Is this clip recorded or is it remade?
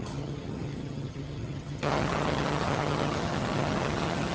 remade